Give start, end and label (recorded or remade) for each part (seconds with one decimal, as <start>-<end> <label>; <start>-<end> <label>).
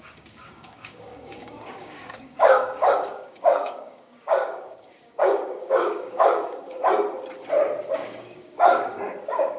0.0-6.8 remade; 6.8-7.9 recorded; 7.9-9.6 remade